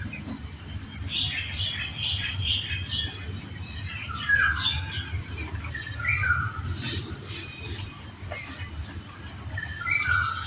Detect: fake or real real